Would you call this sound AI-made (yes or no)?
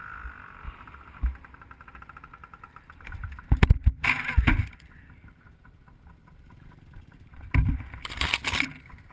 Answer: yes